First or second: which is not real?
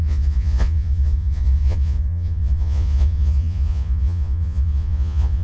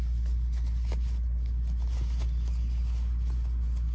first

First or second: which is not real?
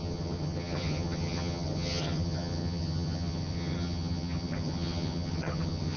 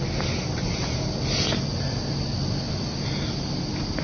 first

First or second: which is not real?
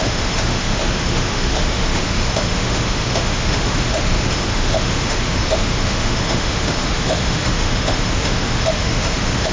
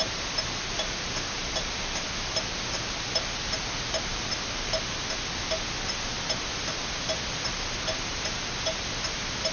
first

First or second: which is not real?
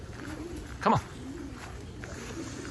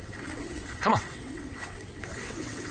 second